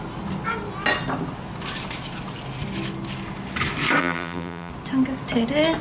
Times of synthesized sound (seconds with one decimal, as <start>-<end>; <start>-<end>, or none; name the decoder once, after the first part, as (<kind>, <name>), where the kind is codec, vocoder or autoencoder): 4.0-4.7 (vocoder, BigVGAN v2)